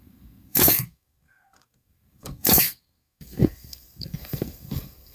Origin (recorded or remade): remade